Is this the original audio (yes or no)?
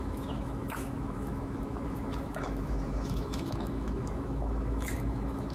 no